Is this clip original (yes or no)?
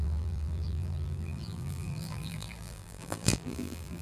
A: no